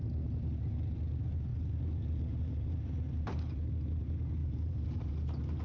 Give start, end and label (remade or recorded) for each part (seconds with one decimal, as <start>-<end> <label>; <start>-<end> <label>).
0.0-1.5 recorded; 1.5-3.7 remade; 3.7-4.4 recorded; 4.4-5.1 remade; 5.1-5.6 recorded